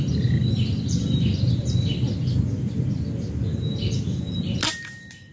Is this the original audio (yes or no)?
yes